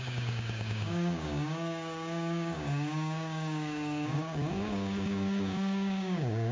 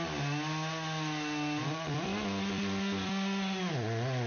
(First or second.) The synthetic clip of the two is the first